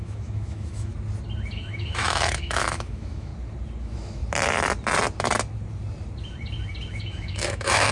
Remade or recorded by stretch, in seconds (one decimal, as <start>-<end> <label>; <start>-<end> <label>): 0.0-0.9 remade; 0.9-1.5 recorded; 1.5-3.3 remade; 3.3-3.8 recorded; 3.8-4.2 remade; 4.2-6.9 recorded; 6.9-7.9 remade

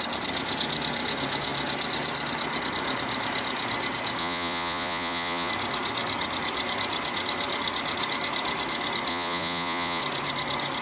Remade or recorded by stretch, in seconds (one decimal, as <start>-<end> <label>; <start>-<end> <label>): 0.0-4.2 recorded; 4.2-5.5 remade; 5.5-9.1 recorded; 9.1-10.0 remade; 10.0-10.8 recorded

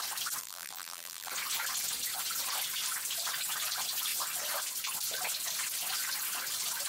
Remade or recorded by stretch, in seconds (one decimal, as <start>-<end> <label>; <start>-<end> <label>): 0.0-0.4 recorded; 0.4-1.3 remade; 1.3-6.9 recorded

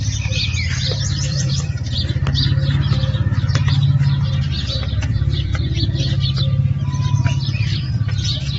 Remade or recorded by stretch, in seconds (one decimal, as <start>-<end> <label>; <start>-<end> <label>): 0.0-2.2 remade; 2.2-4.3 recorded; 4.3-5.5 remade; 5.5-7.1 recorded; 7.1-8.6 remade